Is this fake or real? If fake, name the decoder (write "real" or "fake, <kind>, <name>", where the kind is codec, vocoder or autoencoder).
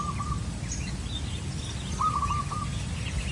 real